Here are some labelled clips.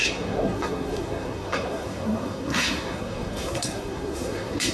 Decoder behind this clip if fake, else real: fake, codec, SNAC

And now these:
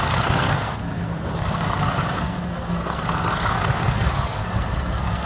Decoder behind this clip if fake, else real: fake, codec, SNAC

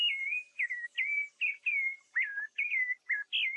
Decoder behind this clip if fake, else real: real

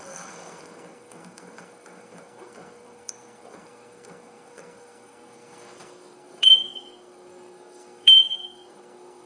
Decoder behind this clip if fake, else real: fake, codec, SNAC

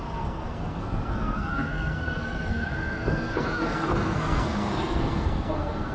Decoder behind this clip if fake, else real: fake, codec, SNAC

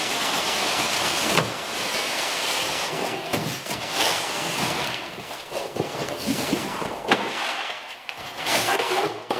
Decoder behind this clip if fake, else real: fake, codec, SNAC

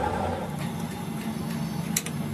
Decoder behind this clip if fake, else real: real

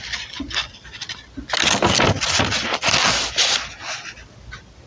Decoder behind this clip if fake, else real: real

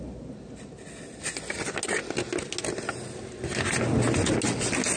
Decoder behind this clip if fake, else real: real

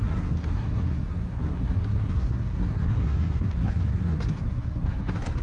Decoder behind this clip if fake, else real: fake, codec, SNAC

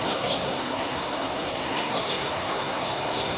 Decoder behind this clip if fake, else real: fake, codec, SNAC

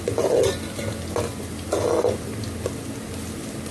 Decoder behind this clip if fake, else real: real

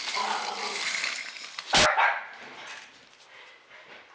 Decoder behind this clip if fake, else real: real